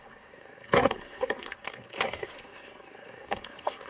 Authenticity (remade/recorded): remade